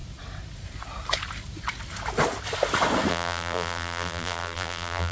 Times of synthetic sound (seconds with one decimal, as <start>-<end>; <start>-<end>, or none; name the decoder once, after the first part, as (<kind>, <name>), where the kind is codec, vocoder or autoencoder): 3.1-5.1 (vocoder, BigVGAN v2)